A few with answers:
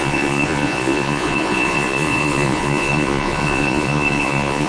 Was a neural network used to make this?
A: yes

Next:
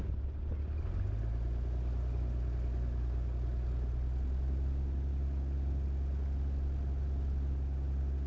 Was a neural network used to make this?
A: no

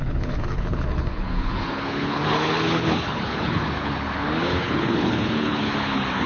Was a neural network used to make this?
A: yes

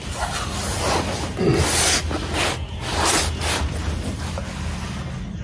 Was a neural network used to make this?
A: no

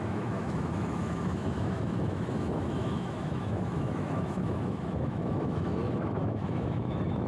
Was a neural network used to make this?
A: yes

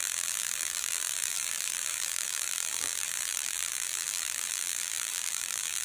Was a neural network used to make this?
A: yes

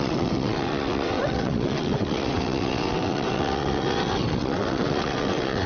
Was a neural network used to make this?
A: yes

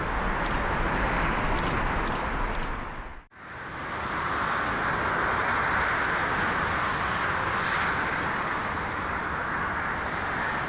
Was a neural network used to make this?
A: no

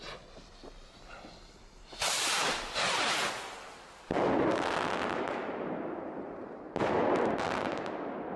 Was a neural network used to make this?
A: no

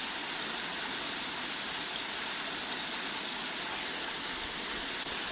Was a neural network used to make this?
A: no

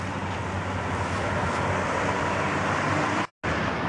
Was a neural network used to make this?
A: no